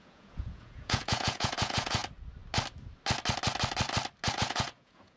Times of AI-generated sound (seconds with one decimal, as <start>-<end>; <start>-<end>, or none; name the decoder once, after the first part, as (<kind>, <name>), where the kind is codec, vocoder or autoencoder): 0.0-2.0 (vocoder, Vocos); 4.3-5.2